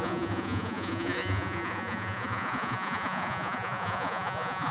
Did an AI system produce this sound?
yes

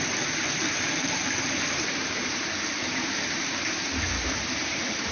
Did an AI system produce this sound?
yes